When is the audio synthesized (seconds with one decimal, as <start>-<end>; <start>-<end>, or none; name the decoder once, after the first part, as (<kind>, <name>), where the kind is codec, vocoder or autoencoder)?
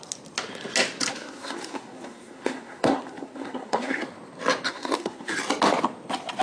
1.1-4.0 (codec, SNAC); 4.7-5.3